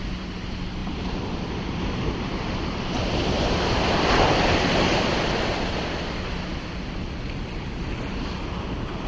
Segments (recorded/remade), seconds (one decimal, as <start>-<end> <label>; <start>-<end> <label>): 0.0-9.1 recorded